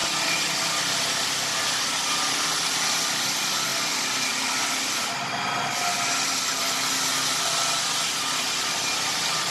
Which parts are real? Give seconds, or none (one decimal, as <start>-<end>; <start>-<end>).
2.0-9.5